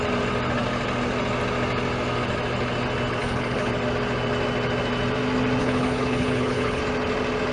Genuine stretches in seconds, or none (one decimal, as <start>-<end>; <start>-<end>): 0.0-3.2; 3.7-5.6; 6.8-7.5